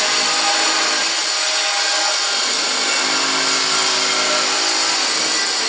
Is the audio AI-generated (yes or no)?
no